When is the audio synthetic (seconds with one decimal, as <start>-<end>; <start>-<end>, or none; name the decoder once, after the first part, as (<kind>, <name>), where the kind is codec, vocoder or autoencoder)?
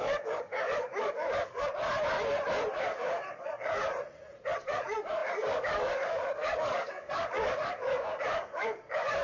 0.0-1.7 (codec, DAC); 2.8-3.9; 4.6-9.2